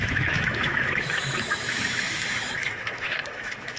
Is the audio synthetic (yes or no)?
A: yes